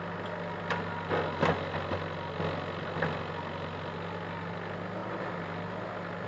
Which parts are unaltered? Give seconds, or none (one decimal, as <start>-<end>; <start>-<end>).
0.0-6.3